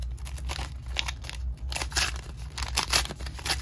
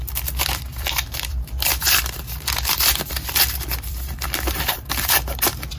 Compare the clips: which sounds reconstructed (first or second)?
second